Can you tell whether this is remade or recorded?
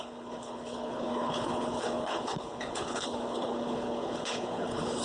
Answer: remade